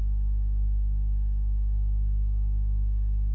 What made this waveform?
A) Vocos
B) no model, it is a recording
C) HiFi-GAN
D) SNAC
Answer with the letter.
D